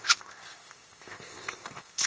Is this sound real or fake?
fake